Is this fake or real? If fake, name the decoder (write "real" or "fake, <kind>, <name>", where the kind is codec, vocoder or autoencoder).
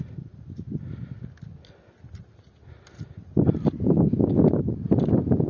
real